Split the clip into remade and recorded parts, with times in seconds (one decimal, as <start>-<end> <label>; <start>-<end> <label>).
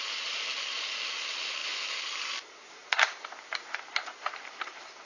0.0-5.1 remade